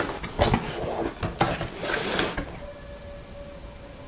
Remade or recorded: recorded